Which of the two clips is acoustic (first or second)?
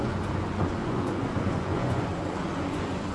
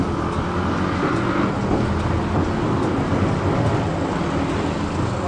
second